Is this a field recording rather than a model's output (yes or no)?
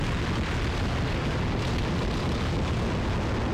yes